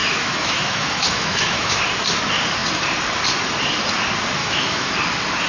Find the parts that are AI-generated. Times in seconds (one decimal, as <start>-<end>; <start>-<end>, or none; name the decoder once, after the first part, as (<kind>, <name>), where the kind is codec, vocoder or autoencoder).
0.0-1.8 (autoencoder, DAC-VAE); 4.4-4.9